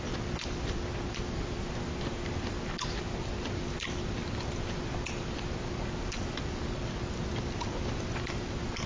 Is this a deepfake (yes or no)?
no